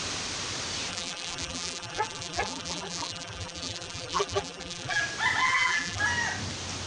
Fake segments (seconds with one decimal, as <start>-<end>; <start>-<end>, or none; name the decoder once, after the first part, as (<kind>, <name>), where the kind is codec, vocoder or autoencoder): 0.9-5.0 (vocoder, BigVGAN v2); 5.4-6.0